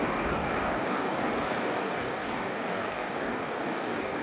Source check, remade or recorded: remade